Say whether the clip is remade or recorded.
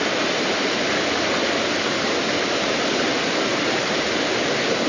recorded